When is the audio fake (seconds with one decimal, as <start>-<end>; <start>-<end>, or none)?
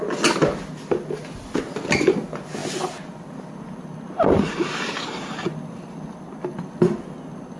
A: none